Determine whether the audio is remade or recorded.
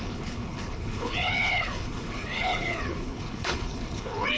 remade